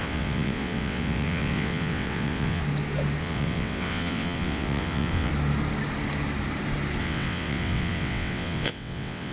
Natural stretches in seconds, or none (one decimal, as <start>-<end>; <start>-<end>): 2.6-3.2; 5.3-7.0